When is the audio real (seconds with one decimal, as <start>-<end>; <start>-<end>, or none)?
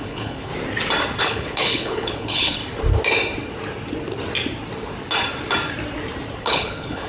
0.5-1.2; 2.6-6.4